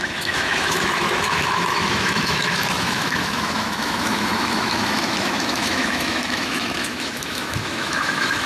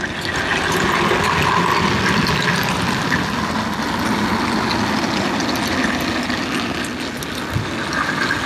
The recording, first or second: second